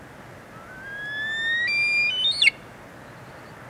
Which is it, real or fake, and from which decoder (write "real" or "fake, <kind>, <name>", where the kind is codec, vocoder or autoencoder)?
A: real